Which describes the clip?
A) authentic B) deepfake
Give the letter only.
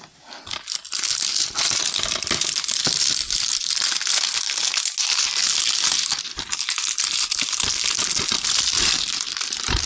A